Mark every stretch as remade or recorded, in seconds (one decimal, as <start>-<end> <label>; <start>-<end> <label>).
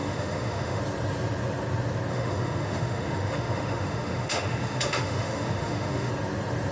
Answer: 0.0-0.8 remade; 0.8-2.1 recorded; 2.1-6.1 remade; 6.1-6.7 recorded